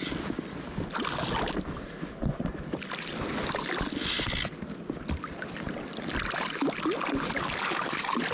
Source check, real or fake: real